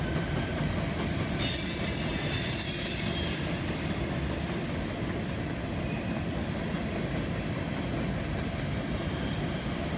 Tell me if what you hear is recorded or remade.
recorded